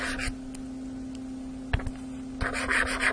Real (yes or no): yes